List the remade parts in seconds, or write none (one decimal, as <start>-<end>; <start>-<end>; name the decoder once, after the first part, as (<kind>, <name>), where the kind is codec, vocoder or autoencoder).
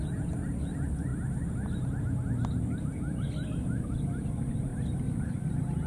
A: none